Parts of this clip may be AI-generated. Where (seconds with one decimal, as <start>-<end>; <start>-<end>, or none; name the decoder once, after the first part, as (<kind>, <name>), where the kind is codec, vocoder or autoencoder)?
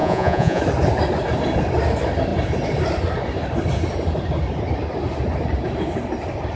0.0-0.6 (vocoder, Vocos)